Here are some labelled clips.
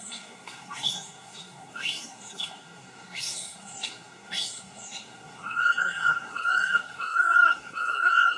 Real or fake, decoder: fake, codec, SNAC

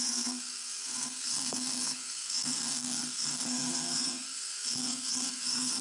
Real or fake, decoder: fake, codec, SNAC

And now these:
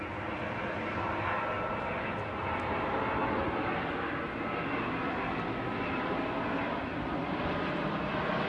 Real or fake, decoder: real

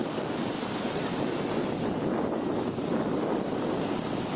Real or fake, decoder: real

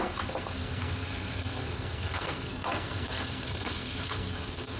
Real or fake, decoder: fake, codec, SNAC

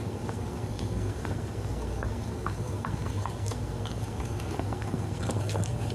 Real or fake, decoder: fake, codec, SNAC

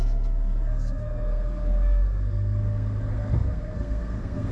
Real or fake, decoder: fake, codec, SNAC